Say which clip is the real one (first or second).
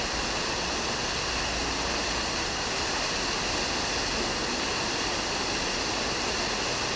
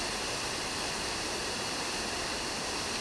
first